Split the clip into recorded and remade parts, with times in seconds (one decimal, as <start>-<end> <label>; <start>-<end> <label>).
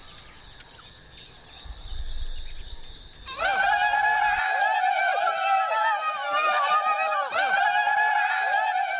0.0-9.0 recorded